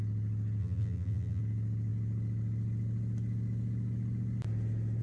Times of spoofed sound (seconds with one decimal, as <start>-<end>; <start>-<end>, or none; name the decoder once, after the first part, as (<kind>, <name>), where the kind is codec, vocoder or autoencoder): 0.6-1.4 (vocoder, BigVGAN v2)